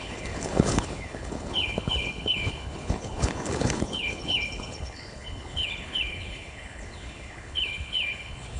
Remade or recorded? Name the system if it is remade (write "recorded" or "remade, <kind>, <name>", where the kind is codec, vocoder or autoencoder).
remade, codec, HILCodec